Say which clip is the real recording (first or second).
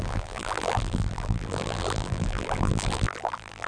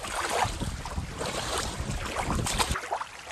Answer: second